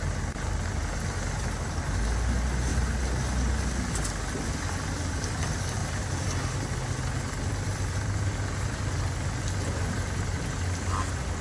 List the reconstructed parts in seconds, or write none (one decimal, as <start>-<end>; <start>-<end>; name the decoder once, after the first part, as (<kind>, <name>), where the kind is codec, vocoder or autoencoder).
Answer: none